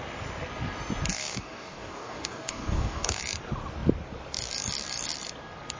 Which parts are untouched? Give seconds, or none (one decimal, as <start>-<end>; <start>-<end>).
0.0-1.1; 3.2-5.8